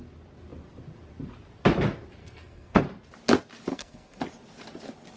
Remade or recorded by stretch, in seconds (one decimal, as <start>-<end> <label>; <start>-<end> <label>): 0.0-2.2 recorded; 2.2-2.8 remade; 2.8-3.7 recorded; 3.7-4.2 remade; 4.2-5.2 recorded